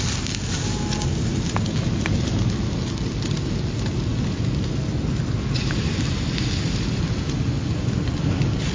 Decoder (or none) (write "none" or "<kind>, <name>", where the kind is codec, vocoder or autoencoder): none